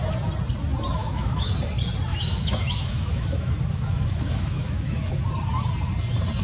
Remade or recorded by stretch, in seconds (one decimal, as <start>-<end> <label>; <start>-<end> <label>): 0.0-1.0 recorded; 1.0-1.5 remade; 1.5-2.1 recorded; 2.1-5.1 remade; 5.1-6.4 recorded